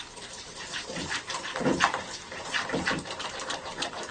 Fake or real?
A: fake